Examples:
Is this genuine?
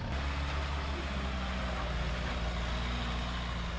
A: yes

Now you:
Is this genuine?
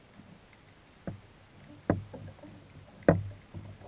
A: yes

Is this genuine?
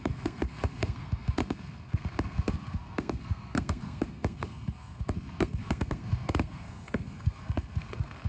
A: no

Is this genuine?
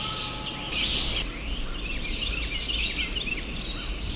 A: yes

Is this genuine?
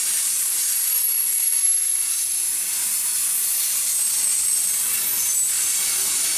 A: yes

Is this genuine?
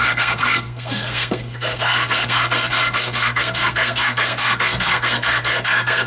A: no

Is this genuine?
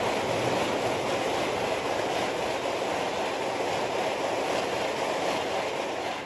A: yes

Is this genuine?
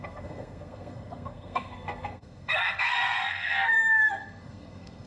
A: no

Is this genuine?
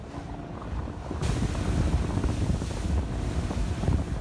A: yes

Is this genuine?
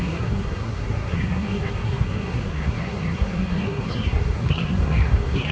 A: no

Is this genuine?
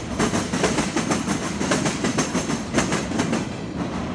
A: yes